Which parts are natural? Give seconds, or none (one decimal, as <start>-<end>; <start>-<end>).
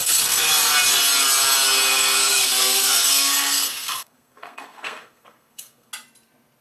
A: 0.5-1.9; 5.9-6.6